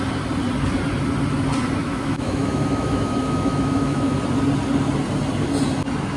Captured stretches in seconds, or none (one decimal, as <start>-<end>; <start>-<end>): 0.0-1.8; 4.2-6.2